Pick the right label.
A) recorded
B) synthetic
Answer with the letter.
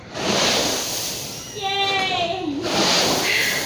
A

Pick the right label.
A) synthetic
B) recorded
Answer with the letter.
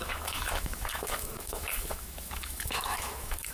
A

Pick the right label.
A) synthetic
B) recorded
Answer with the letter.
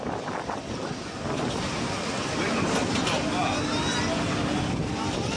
B